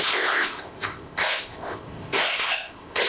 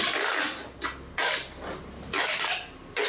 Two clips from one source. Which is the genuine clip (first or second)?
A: second